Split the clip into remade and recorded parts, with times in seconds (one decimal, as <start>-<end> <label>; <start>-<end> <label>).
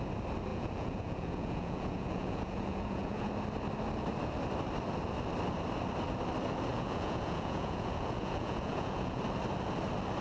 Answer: 0.0-0.5 recorded; 0.5-3.3 remade; 3.3-6.7 recorded; 6.7-9.2 remade; 9.2-10.2 recorded